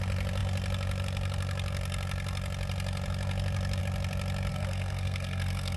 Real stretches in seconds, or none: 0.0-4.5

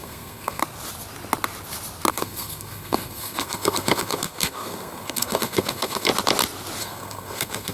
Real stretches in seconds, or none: 0.6-2.1; 6.1-6.8

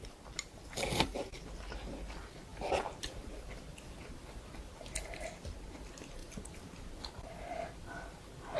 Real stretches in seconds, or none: 0.0-8.6

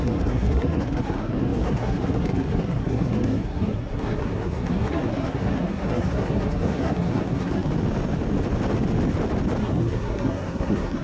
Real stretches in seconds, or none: 7.7-9.6

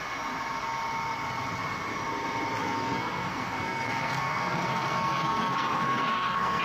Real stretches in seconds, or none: 0.0-2.6

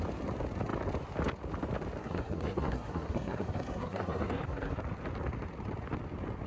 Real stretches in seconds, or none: 0.0-2.0; 4.8-6.5